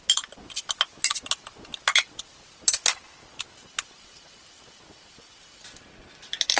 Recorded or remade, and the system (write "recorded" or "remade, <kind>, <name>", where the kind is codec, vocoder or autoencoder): recorded